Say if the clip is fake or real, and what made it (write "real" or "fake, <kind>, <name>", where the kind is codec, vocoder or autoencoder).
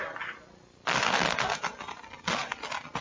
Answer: real